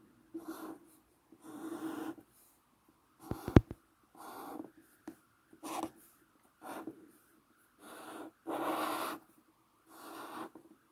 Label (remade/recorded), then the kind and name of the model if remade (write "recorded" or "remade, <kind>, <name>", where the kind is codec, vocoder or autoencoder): recorded